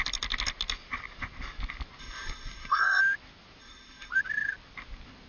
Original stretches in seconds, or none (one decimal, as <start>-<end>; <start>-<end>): 0.0-2.0; 3.0-3.6; 4.1-5.3